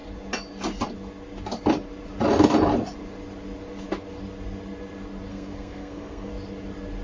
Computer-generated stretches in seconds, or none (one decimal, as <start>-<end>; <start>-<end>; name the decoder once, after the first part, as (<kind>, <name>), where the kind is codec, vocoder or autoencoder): 5.3-6.3 (codec, SNAC)